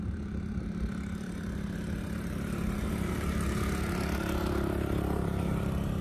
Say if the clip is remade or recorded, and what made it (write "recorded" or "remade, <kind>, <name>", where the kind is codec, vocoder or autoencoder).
remade, vocoder, BigVGAN v2